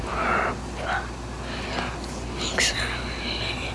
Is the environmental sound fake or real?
real